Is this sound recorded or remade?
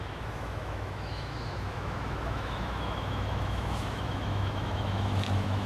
remade